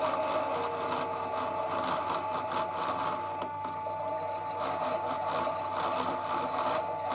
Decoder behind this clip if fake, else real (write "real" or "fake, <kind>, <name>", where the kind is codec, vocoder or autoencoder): real